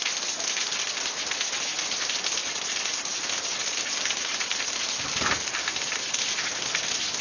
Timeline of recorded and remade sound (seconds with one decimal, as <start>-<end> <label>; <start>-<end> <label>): 0.0-3.6 recorded; 3.6-6.3 remade; 6.3-7.2 recorded